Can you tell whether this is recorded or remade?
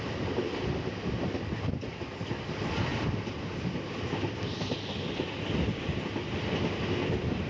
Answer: recorded